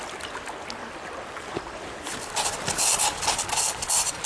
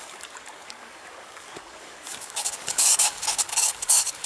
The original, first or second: first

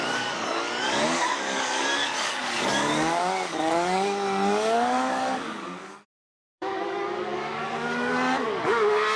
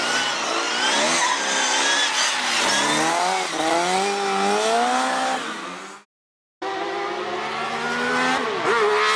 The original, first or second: second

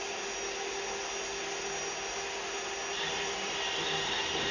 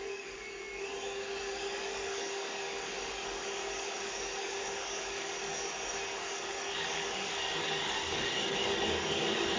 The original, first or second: first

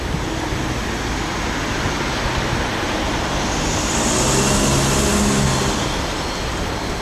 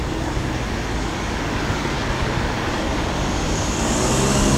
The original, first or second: first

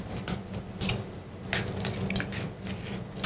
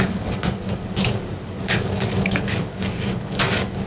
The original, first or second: first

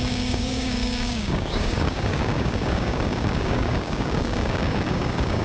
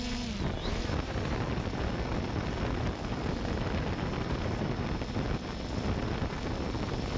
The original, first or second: second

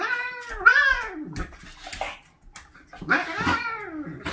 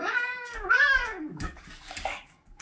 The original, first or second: first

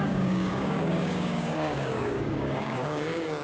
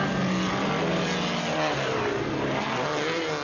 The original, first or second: second